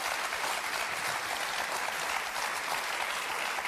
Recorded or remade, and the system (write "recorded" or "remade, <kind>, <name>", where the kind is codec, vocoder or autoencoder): recorded